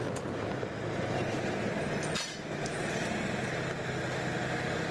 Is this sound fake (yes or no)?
no